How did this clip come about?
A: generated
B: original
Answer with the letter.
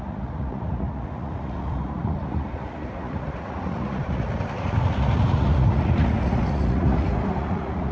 A